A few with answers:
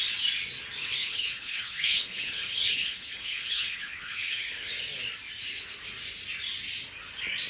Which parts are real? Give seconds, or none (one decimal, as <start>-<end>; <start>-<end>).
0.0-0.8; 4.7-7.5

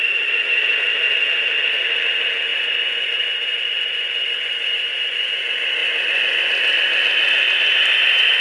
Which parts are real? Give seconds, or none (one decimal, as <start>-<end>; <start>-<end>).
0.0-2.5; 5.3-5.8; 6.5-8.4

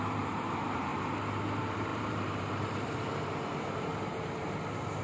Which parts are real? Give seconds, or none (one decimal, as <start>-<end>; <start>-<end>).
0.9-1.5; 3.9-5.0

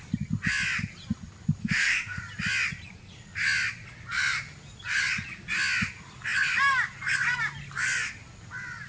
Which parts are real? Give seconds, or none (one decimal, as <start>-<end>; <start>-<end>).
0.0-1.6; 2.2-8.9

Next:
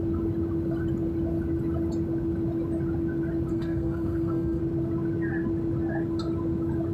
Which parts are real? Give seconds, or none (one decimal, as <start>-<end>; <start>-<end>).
0.0-3.5; 4.6-6.9

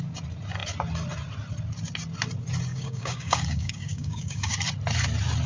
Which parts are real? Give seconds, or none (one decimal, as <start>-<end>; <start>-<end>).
0.0-2.7; 4.5-5.5